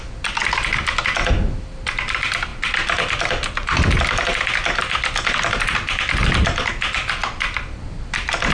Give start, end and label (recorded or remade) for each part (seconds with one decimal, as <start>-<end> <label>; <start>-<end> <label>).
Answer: 0.0-7.2 recorded; 7.2-8.1 remade; 8.1-8.5 recorded